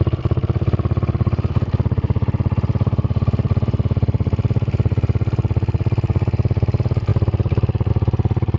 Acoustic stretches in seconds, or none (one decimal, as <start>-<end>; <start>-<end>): none